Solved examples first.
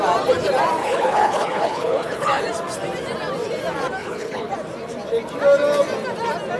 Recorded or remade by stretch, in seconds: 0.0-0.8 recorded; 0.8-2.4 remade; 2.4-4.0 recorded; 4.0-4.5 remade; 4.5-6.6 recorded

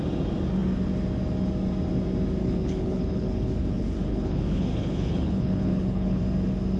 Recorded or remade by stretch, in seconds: 0.0-2.4 recorded; 2.4-6.2 remade; 6.2-6.8 recorded